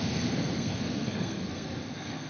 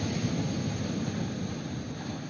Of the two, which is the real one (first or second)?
second